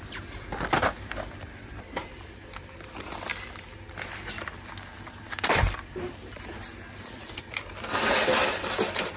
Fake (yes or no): yes